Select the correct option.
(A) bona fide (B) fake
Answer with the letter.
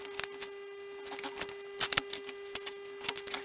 A